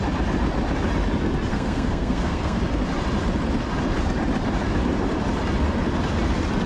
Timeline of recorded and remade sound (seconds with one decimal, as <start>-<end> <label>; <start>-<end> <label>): 0.0-1.5 recorded; 1.5-2.6 remade; 2.6-6.7 recorded